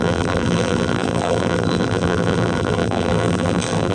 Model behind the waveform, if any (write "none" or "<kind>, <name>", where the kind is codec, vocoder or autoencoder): vocoder, BigVGAN v2